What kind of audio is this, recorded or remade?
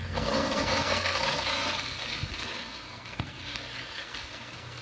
remade